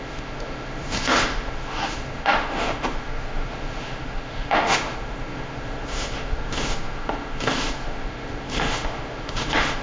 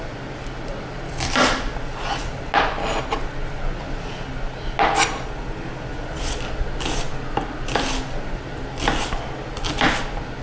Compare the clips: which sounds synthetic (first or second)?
first